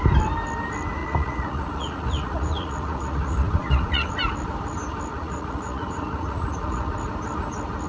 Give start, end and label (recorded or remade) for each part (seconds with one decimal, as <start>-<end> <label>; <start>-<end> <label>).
0.0-1.0 recorded; 1.0-4.1 remade; 4.1-5.1 recorded; 5.1-6.9 remade; 6.9-7.9 recorded